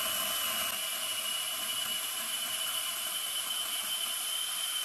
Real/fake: real